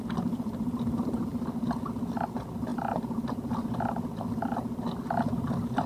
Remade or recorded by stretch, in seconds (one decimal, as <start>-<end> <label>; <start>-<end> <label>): 0.0-1.3 remade; 1.3-2.3 recorded; 2.3-2.7 remade; 2.7-5.4 recorded; 5.4-5.9 remade